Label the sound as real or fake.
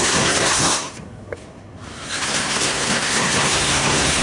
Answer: fake